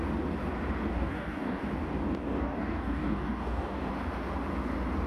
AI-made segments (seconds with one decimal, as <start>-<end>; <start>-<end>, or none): 0.9-1.6; 2.2-3.9